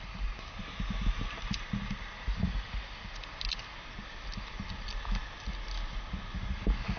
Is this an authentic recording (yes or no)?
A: yes